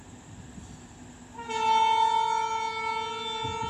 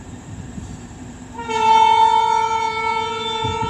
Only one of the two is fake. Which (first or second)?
second